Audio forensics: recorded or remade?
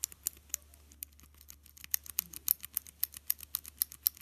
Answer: recorded